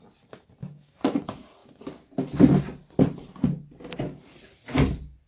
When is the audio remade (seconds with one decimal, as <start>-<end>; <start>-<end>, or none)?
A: 0.6-1.2